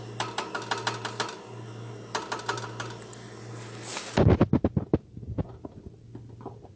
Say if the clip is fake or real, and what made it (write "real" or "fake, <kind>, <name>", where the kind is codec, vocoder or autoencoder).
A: real